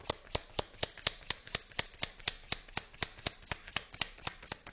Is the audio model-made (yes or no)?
no